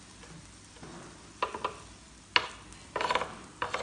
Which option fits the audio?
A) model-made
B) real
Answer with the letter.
B